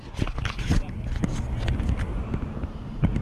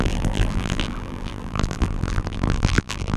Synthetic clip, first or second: second